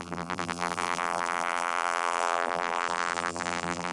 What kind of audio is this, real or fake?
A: fake